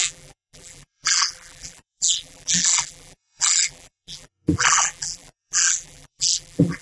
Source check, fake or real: fake